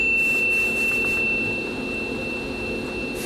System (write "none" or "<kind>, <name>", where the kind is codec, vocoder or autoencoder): none